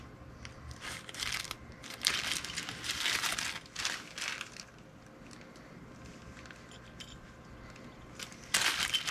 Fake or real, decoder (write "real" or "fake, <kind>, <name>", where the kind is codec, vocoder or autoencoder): real